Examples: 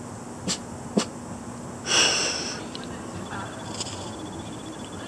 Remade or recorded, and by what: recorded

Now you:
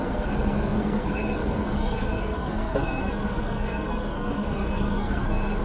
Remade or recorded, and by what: remade, codec, SNAC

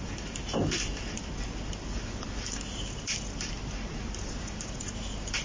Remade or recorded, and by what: recorded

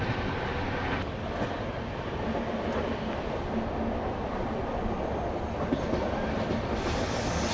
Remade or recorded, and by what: recorded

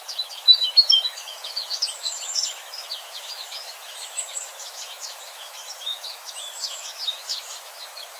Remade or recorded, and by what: remade, autoencoder, DAC-VAE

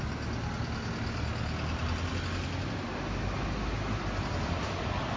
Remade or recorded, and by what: recorded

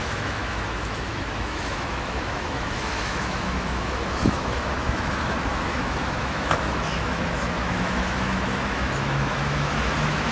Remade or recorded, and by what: remade, autoencoder, DAC-VAE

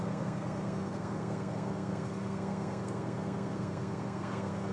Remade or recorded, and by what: remade, codec, SNAC